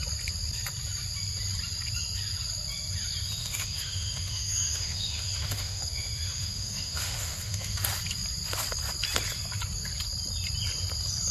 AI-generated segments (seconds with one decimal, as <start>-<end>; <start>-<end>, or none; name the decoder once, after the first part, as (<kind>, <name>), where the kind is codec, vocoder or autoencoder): 3.4-7.8 (autoencoder, DAC-VAE)